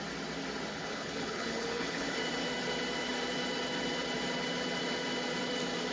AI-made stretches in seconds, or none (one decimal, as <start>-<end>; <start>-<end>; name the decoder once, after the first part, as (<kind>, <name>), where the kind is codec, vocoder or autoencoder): 0.7-2.2 (codec, HILCodec)